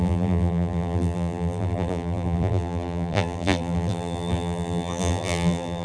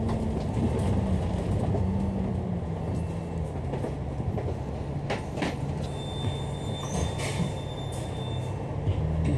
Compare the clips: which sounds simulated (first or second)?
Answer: first